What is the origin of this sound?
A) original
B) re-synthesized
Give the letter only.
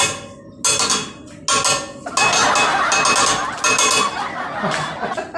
A